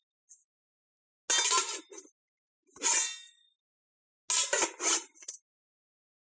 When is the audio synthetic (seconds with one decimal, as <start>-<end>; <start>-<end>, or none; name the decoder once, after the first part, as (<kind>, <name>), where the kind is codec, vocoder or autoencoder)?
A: none